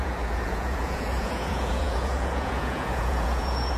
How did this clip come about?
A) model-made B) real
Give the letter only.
A